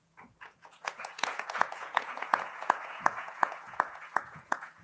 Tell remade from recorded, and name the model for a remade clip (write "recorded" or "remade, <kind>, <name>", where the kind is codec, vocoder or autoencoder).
remade, vocoder, Vocos